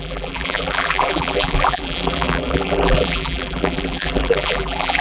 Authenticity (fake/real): fake